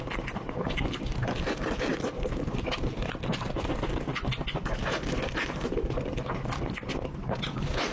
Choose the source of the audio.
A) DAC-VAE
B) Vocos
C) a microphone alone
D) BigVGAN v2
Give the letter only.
C